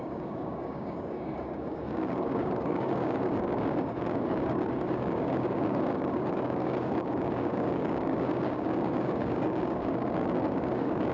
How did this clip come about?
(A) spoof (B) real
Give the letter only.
A